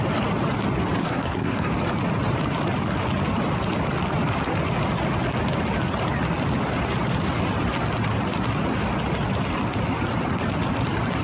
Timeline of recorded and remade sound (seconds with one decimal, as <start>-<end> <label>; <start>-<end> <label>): 0.0-1.0 recorded; 1.0-1.7 remade; 1.7-11.2 recorded